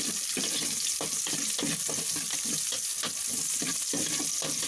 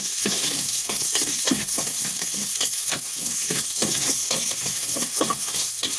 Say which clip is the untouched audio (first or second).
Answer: first